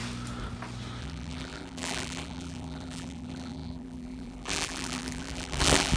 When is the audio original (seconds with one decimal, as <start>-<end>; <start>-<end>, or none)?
0.0-1.0